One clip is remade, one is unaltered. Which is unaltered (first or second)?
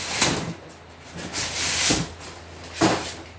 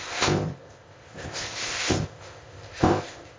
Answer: first